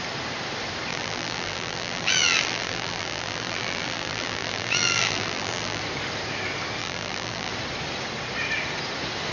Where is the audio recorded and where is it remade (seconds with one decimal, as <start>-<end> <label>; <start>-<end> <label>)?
0.0-0.9 recorded; 0.9-5.8 remade; 5.8-6.8 recorded; 6.8-7.5 remade; 7.5-9.3 recorded